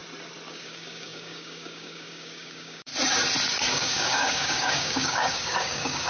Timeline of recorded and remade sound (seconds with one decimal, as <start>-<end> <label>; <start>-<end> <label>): 0.0-0.5 recorded; 0.5-2.9 remade; 2.9-3.7 recorded; 3.7-6.1 remade